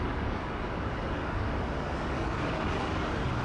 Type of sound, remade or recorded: remade